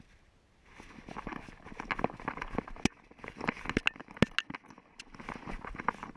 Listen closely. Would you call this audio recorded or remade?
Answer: recorded